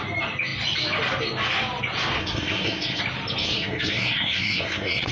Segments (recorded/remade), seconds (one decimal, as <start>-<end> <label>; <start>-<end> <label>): 0.0-2.2 recorded; 2.2-3.0 remade; 3.0-3.4 recorded; 3.4-5.1 remade

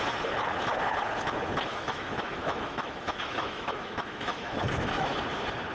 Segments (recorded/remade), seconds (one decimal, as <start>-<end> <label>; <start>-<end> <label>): 0.0-1.7 recorded; 1.7-5.1 remade; 5.1-5.7 recorded

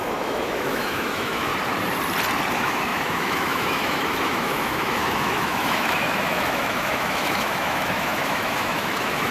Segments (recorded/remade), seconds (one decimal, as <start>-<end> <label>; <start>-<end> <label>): 0.0-1.5 remade; 1.5-2.5 recorded; 2.5-9.3 remade

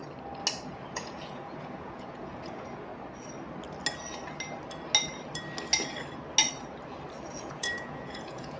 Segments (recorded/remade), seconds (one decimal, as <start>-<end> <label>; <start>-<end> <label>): 0.0-0.7 recorded; 0.7-2.9 remade; 2.9-7.3 recorded; 7.3-8.6 remade

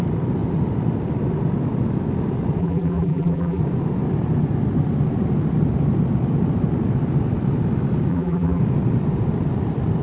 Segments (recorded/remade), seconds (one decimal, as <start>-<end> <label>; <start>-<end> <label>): 0.0-2.6 recorded; 2.6-3.6 remade; 3.6-8.1 recorded; 8.1-8.6 remade; 8.6-10.0 recorded

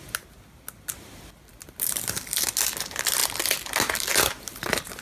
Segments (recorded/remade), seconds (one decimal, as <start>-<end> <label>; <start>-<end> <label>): 0.0-5.0 recorded

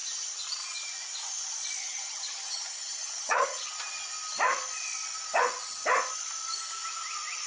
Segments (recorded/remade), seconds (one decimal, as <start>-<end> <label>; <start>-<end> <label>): 0.0-1.8 recorded; 1.8-3.7 remade; 3.7-7.5 recorded

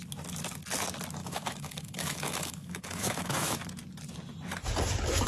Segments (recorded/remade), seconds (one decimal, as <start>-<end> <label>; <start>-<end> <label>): 0.0-1.2 recorded; 1.2-3.6 remade; 3.6-5.3 recorded